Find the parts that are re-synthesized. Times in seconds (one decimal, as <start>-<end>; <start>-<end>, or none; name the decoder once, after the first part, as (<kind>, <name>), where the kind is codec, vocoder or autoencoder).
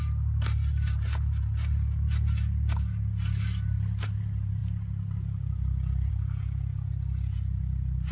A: none